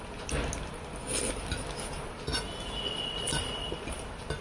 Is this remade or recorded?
recorded